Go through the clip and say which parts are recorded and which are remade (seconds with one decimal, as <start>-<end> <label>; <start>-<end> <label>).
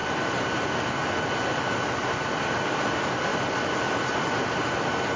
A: 0.0-5.2 recorded